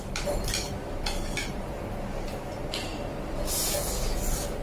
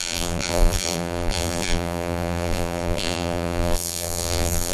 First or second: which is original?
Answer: first